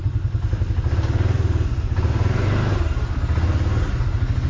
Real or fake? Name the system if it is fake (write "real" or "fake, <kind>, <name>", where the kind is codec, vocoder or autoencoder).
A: real